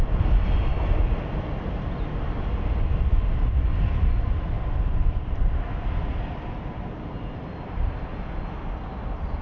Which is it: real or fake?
real